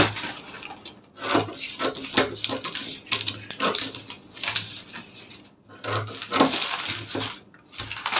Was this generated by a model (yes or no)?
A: no